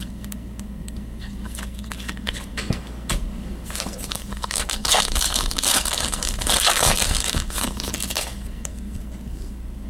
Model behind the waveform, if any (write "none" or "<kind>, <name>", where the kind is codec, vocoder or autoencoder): codec, SNAC